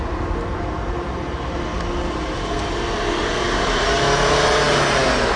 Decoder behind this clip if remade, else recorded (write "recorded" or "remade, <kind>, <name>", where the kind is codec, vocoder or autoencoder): recorded